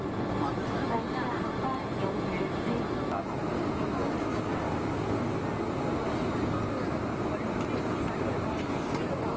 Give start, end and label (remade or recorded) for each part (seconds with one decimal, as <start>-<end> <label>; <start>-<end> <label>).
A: 0.0-9.4 recorded